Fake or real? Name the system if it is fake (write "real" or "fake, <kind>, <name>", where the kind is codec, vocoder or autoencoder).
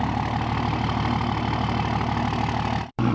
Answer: fake, vocoder, BigVGAN v2